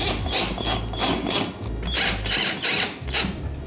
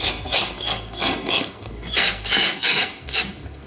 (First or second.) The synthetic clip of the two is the second